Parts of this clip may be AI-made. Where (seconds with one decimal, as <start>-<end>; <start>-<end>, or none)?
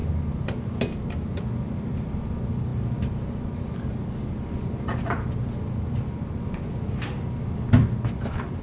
none